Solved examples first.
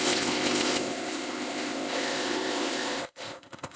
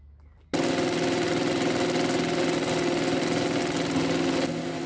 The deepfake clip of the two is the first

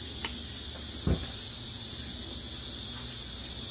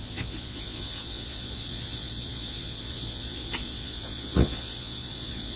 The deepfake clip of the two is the second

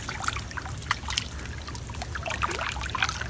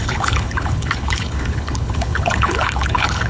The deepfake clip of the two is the second